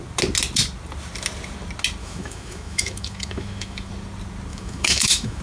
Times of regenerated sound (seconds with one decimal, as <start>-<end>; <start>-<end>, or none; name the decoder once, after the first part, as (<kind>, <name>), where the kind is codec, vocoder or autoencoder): 2.0-3.9 (autoencoder, DAC-VAE); 4.5-5.4